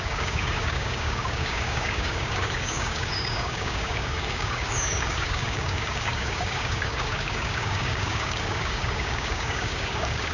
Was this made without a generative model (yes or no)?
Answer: no